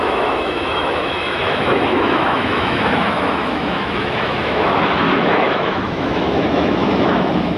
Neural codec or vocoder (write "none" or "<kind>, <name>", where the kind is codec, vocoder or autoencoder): autoencoder, DAC-VAE